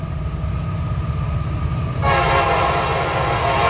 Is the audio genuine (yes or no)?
yes